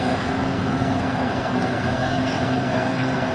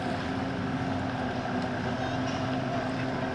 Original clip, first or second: second